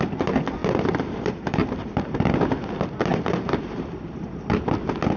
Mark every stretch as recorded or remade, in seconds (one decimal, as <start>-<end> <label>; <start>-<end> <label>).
0.0-0.6 recorded; 0.6-2.3 remade; 2.3-3.1 recorded; 3.1-4.5 remade; 4.5-5.2 recorded